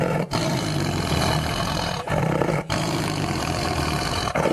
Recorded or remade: remade